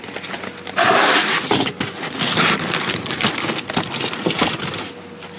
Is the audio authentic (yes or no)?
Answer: yes